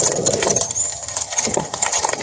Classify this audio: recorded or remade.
remade